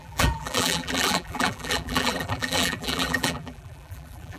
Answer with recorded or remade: remade